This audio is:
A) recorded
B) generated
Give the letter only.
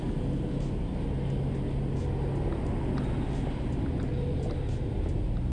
A